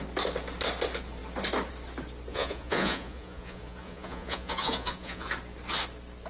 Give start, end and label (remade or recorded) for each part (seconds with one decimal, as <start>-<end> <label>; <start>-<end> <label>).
0.0-2.3 recorded; 2.3-5.3 remade; 5.3-6.3 recorded